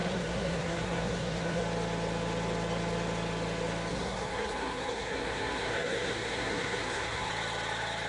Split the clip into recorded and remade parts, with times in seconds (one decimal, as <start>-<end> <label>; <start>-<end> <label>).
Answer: 0.0-1.6 remade; 1.6-3.9 recorded; 3.9-7.3 remade; 7.3-8.1 recorded